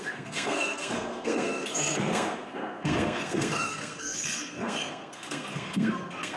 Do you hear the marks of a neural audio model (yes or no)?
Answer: yes